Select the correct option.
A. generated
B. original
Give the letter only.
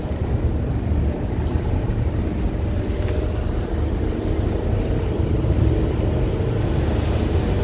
B